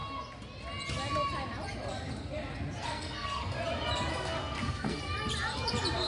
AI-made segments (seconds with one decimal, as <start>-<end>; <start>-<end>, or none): 2.8-3.6; 4.1-5.0